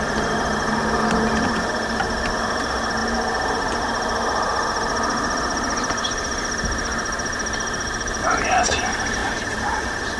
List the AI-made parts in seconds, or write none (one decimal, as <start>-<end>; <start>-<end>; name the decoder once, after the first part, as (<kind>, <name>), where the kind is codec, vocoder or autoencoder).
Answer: 9.2-10.2 (vocoder, BigVGAN v2)